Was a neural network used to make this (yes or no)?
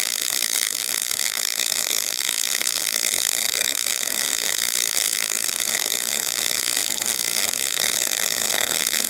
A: yes